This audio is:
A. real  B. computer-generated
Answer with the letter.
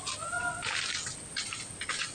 A